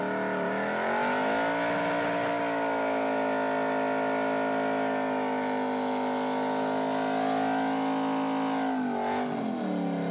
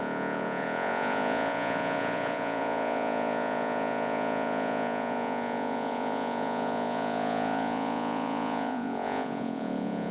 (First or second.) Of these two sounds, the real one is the first